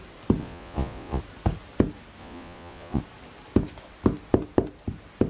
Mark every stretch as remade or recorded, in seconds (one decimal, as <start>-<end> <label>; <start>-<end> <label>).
0.0-0.4 recorded; 0.4-1.2 remade; 1.2-2.2 recorded; 2.2-3.0 remade; 3.0-5.3 recorded